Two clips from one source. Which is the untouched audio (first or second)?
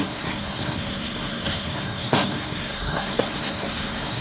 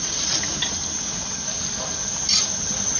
second